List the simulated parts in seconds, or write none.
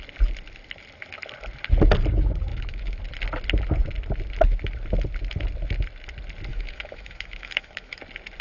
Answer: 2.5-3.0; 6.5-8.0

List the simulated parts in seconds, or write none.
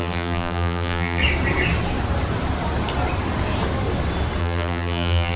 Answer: 0.0-1.2; 4.4-5.4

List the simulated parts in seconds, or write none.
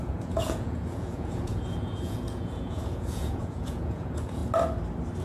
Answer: 0.0-4.4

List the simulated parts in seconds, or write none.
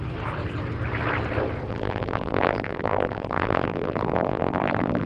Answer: 1.7-5.1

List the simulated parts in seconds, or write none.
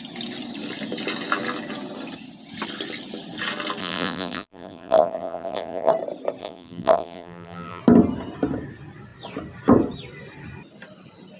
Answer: 3.8-5.9; 6.4-7.8